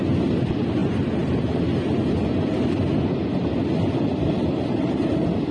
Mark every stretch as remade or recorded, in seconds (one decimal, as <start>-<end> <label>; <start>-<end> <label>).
0.0-0.8 recorded; 0.8-1.6 remade; 1.6-4.4 recorded; 4.4-5.1 remade; 5.1-5.5 recorded